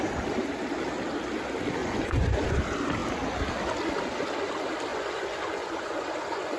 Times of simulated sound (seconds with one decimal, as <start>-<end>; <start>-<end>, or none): 1.8-2.6; 4.9-6.6